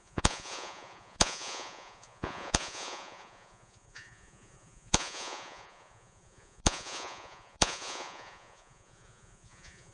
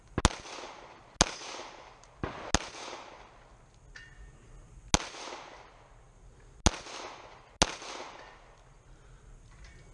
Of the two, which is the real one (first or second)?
second